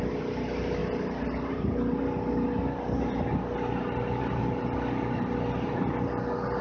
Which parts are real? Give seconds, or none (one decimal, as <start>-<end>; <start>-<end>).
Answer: 0.0-6.6